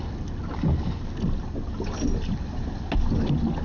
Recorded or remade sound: recorded